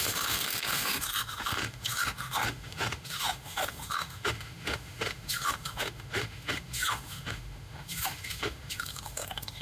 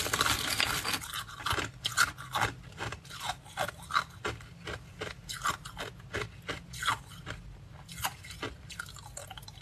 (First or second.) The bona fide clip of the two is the second